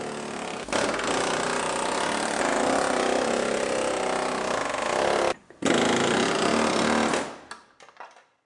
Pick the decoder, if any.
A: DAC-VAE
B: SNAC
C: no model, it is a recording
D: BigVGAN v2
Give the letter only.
C